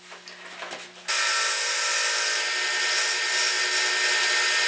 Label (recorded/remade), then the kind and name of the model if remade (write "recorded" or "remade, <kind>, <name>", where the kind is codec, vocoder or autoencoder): recorded